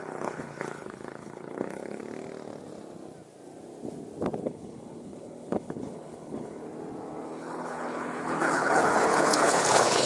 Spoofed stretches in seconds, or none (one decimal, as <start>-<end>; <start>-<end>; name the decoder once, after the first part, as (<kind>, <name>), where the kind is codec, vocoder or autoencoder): 0.0-2.0 (codec, HILCodec); 4.4-6.6; 7.2-10.1